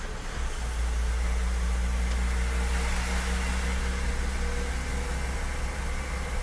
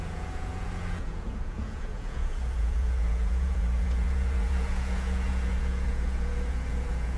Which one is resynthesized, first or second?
second